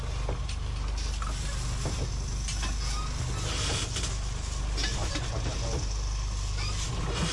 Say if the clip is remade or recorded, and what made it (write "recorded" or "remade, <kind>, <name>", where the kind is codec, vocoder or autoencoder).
recorded